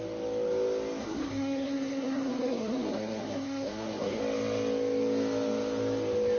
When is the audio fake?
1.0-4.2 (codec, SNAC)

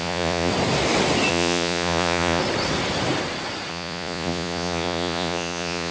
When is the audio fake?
0.0-0.5 (vocoder, Vocos); 1.3-2.4; 3.7-5.9

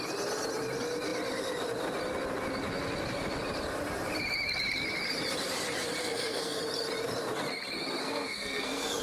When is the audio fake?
6.0-6.6 (codec, SNAC); 8.0-9.0

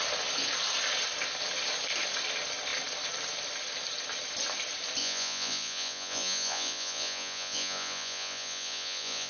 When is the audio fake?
5.0-9.3 (vocoder, Vocos)

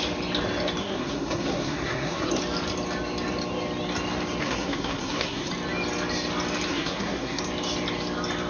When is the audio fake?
0.8-2.3 (codec, SNAC); 4.4-5.5; 6.7-7.4

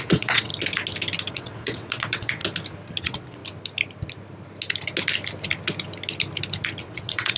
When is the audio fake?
0.0-0.5 (vocoder, WaveNeXt); 1.3-2.4; 3.0-3.4; 6.8-7.4

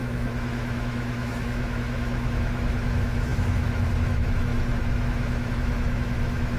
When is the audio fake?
0.0-6.6 (autoencoder, DAC-VAE)